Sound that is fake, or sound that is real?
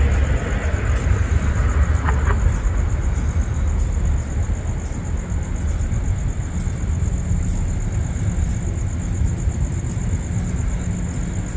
real